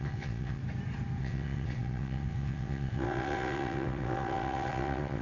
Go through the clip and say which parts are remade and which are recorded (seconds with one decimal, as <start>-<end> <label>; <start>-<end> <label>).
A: 0.0-0.6 remade; 0.6-1.2 recorded; 1.2-5.2 remade